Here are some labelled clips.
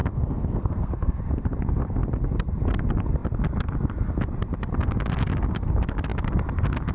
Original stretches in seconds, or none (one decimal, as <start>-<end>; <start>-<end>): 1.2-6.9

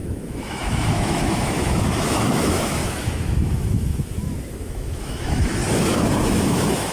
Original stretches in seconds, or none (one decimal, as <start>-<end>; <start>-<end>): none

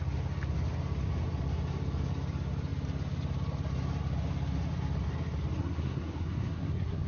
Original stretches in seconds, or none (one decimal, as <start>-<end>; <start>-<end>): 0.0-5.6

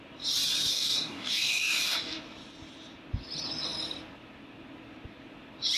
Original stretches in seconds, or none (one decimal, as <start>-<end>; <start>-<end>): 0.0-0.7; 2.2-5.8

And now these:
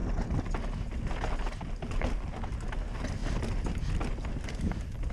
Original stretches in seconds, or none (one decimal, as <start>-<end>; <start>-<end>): 0.0-5.1

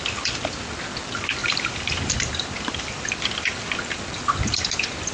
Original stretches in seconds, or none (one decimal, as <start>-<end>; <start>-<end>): 0.0-1.4; 3.1-5.1